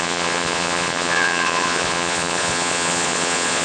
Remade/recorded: remade